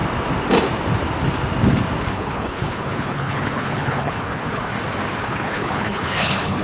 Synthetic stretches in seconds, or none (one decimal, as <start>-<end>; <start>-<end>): 2.0-4.7; 5.2-6.6